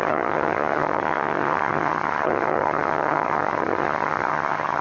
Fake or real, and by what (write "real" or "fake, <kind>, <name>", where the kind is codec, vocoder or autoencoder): fake, vocoder, HiFi-GAN